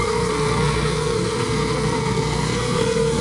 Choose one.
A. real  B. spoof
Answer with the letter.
B